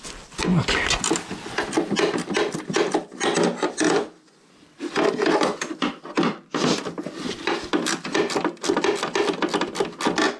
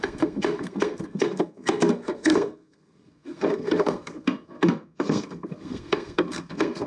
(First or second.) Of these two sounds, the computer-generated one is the second